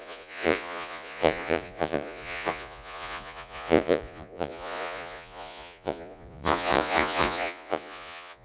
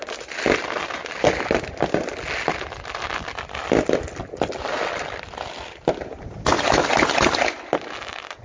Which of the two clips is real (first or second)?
second